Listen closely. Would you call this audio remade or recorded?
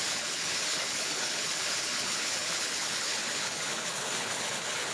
remade